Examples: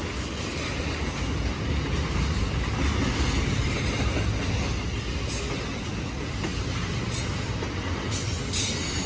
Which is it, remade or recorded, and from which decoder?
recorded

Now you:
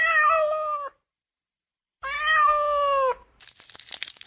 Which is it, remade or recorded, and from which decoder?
recorded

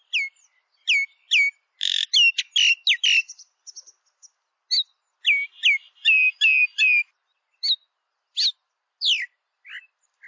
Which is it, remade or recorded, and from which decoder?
recorded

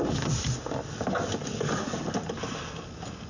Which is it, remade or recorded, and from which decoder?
recorded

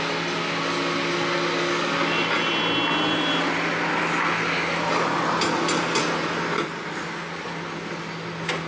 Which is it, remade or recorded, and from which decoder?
recorded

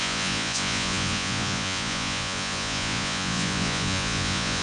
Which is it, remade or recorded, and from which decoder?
remade, vocoder, Vocos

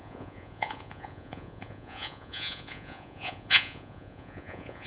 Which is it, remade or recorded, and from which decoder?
remade, vocoder, Vocos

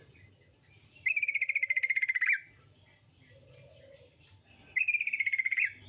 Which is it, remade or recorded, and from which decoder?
recorded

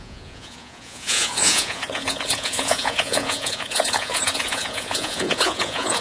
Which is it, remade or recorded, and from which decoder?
remade, vocoder, Vocos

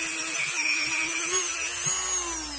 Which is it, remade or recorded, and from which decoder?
recorded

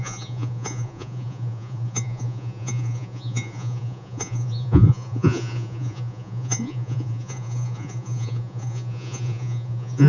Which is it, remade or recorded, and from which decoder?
remade, vocoder, Vocos